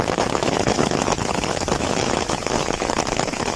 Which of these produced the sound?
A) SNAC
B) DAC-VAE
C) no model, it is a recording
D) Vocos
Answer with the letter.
B